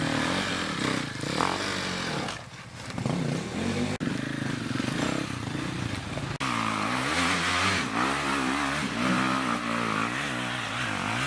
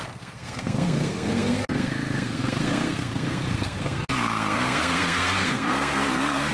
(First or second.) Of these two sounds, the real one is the first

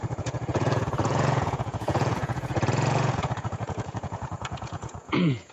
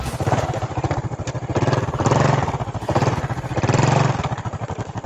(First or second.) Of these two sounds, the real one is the second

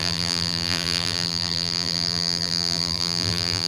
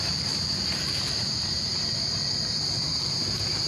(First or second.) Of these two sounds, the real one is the second